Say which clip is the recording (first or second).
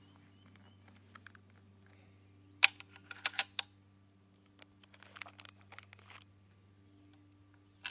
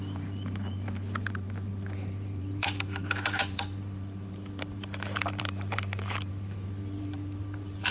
first